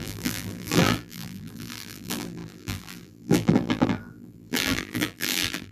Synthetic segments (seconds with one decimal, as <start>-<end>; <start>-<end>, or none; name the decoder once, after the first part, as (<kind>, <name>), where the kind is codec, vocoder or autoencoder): 0.0-5.7 (vocoder, BigVGAN v2)